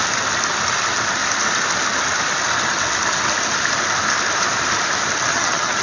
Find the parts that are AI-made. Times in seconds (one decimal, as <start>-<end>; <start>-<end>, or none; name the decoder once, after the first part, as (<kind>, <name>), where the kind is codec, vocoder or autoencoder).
5.3-5.8 (vocoder, HiFi-GAN)